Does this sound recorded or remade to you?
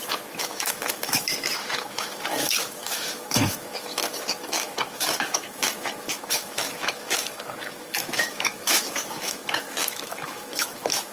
remade